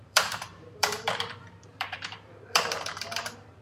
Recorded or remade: remade